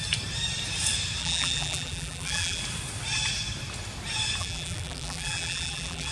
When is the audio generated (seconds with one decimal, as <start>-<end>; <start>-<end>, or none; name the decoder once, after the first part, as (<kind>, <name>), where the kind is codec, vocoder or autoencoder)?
1.2-2.6 (vocoder, BigVGAN v2); 4.4-6.1